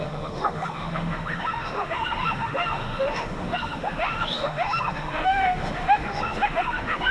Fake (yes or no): yes